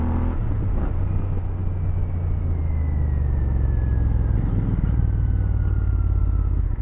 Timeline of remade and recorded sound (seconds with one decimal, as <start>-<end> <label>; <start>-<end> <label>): 0.0-6.8 recorded